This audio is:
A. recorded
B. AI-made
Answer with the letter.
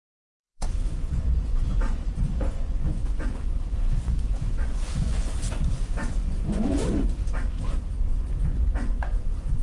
B